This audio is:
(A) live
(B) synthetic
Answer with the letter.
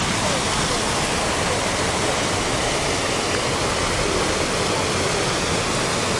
A